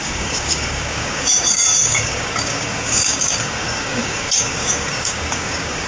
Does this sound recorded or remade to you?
remade